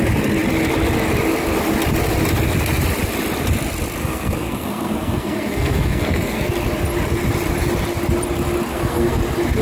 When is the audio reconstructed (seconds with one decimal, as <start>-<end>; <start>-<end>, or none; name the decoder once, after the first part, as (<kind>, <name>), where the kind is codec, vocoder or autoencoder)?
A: 4.0-6.5 (codec, SNAC); 8.7-9.2